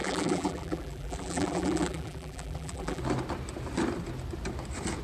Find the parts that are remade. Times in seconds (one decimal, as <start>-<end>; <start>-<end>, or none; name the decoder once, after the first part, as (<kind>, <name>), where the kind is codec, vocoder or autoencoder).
0.0-3.0 (vocoder, BigVGAN v2)